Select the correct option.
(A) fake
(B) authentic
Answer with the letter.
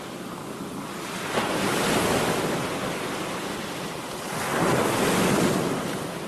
B